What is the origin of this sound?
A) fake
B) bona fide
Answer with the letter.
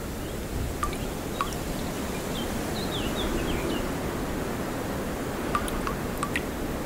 B